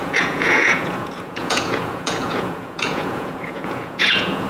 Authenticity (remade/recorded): remade